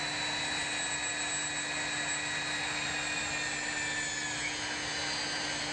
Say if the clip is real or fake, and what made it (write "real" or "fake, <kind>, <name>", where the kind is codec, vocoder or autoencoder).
real